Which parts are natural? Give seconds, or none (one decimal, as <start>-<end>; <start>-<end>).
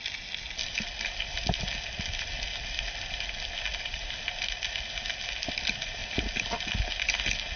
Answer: 0.0-7.6